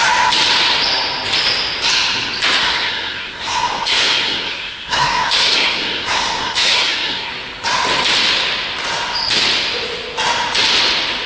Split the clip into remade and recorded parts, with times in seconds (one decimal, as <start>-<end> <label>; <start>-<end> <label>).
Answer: 0.0-2.6 recorded; 2.6-7.3 remade; 7.3-11.3 recorded